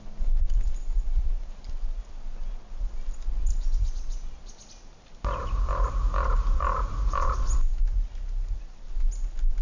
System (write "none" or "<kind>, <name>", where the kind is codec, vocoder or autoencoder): none